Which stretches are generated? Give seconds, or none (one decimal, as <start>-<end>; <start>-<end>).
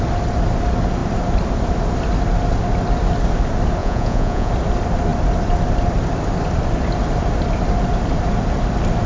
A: 3.8-4.5